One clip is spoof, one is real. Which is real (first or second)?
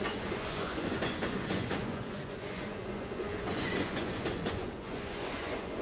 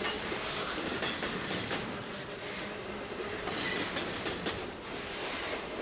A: second